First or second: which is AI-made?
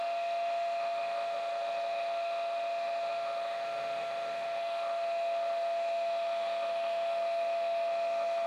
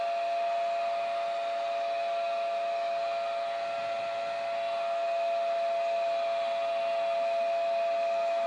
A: first